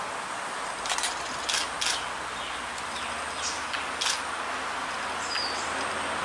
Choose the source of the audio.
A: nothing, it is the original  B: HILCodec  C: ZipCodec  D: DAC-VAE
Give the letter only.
A